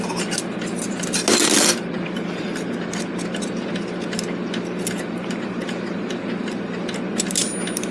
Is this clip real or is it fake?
real